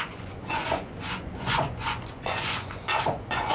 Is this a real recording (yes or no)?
no